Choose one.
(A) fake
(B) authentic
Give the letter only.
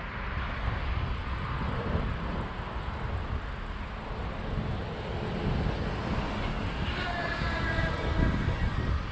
B